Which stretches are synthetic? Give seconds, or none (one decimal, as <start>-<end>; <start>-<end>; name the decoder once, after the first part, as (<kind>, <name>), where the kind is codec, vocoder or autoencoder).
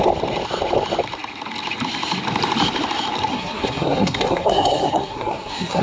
3.3-5.8 (codec, SNAC)